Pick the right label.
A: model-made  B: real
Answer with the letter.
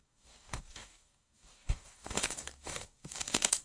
A